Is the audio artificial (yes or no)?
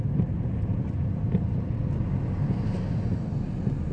no